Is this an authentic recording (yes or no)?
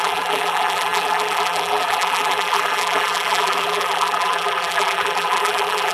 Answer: no